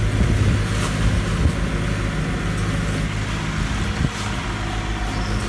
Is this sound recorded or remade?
recorded